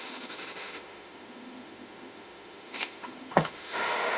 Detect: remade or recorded remade